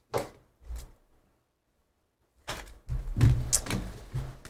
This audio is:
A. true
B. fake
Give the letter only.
A